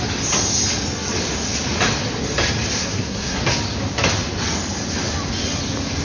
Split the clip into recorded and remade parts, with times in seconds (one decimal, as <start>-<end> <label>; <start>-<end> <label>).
0.0-2.8 recorded; 2.8-3.4 remade; 3.4-6.0 recorded